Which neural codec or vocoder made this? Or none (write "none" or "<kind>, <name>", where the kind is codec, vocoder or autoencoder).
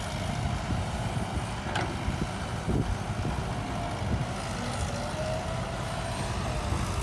none